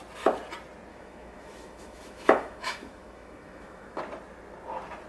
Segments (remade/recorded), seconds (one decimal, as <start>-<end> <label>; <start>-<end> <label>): 0.0-0.9 recorded; 0.9-4.0 remade; 4.0-5.1 recorded